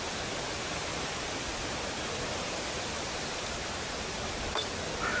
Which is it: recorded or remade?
recorded